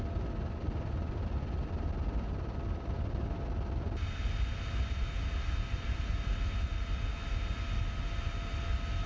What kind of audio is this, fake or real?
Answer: real